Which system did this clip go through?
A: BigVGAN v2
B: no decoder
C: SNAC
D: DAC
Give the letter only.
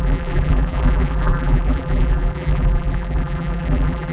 A